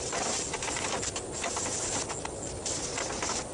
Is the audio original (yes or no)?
yes